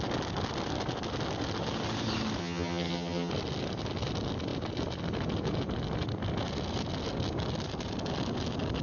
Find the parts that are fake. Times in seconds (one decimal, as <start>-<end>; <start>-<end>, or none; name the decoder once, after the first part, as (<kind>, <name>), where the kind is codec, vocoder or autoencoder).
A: 2.4-3.3 (vocoder, HiFi-GAN)